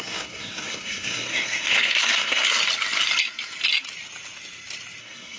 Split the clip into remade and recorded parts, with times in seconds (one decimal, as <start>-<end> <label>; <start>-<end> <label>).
0.0-2.6 remade; 2.6-5.0 recorded; 5.0-5.4 remade